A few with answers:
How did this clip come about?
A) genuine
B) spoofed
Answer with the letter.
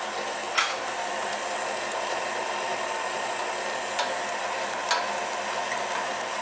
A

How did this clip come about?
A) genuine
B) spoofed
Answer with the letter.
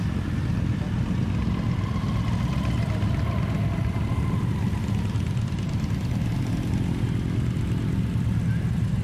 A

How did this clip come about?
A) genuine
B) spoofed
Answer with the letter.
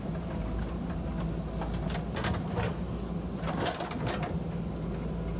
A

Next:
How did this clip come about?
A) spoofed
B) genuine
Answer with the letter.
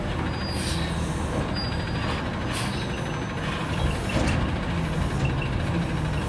B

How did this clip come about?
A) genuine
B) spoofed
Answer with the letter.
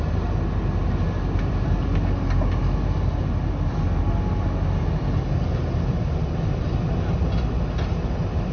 A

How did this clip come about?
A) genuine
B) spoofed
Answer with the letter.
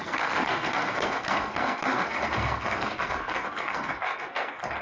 B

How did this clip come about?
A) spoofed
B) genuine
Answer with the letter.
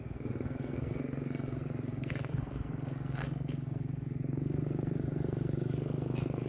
A